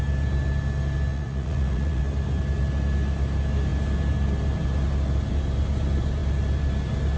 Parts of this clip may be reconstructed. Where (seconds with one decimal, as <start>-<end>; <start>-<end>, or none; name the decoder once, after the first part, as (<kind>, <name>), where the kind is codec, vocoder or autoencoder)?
1.1-2.0 (vocoder, Vocos)